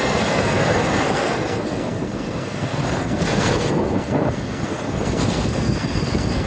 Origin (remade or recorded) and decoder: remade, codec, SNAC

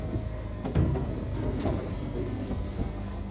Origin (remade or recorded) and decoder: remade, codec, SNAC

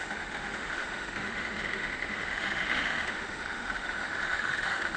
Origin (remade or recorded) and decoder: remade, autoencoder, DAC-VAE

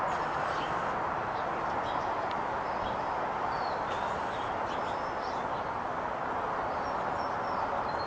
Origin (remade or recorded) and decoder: recorded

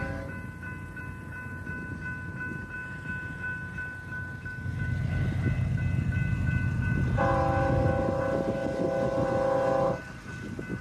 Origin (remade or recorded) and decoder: recorded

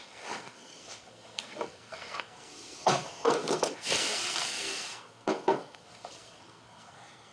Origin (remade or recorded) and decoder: remade, codec, SNAC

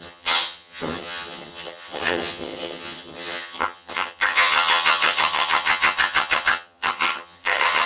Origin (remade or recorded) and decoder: remade, vocoder, HiFi-GAN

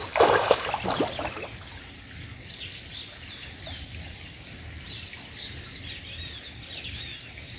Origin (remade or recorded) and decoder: recorded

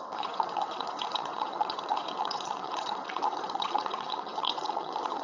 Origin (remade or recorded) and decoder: remade, vocoder, WaveNeXt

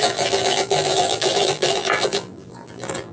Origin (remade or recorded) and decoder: remade, vocoder, BigVGAN v2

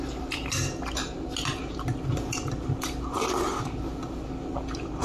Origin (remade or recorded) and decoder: recorded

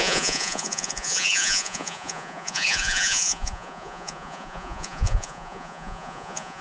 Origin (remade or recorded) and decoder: remade, vocoder, Vocos